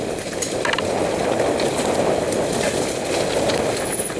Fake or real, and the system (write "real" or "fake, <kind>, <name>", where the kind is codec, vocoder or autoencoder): real